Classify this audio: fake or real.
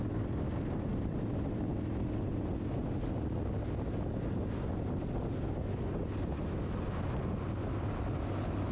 real